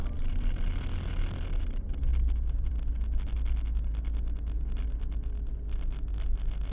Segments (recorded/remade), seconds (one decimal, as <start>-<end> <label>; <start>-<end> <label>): 0.0-1.4 remade; 1.4-2.1 recorded; 2.1-2.7 remade; 2.7-6.7 recorded